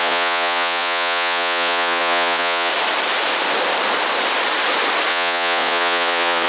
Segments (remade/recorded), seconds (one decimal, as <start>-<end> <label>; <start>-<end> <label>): 0.0-2.7 remade; 2.7-5.1 recorded; 5.1-6.5 remade